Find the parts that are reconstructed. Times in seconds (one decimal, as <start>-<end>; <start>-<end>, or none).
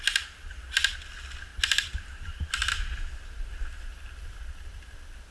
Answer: 3.9-5.3